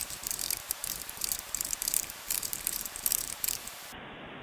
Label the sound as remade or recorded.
remade